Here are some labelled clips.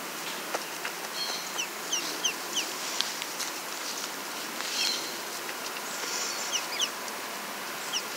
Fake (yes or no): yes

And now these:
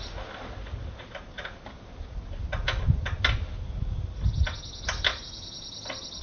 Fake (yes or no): no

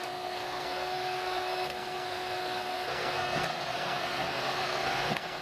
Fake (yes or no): yes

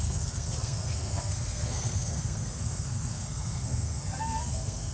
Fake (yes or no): yes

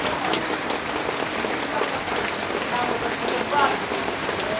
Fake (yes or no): no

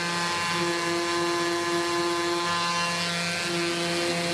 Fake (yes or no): no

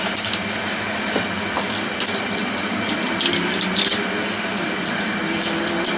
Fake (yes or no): yes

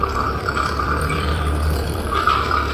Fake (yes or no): yes